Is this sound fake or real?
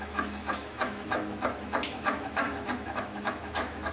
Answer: fake